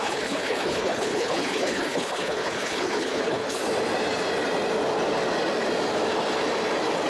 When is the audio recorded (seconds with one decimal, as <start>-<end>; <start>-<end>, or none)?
3.6-7.1